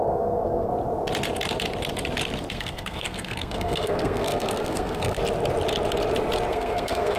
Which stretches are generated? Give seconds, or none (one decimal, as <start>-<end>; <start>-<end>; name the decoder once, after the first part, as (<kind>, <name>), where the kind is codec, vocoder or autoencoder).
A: 0.0-0.7 (codec, SNAC); 2.5-5.2; 6.5-7.2